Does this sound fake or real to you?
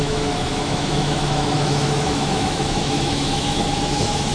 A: fake